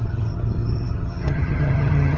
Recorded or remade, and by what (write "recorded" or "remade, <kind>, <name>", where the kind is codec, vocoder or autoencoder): remade, vocoder, HiFi-GAN